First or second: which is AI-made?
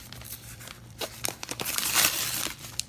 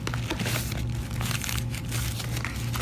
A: first